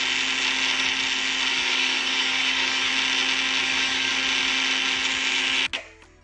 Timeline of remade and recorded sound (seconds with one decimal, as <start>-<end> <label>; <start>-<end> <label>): 0.0-1.5 recorded; 1.5-2.9 remade; 2.9-3.6 recorded; 3.6-4.1 remade; 4.1-6.2 recorded